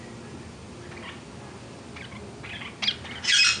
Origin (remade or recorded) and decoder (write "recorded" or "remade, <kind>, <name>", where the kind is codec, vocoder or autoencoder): recorded